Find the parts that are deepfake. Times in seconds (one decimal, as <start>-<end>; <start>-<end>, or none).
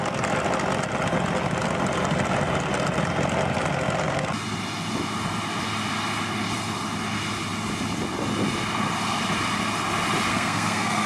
10.3-11.1